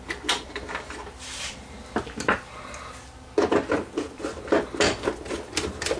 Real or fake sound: real